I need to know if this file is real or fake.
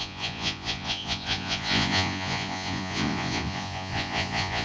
fake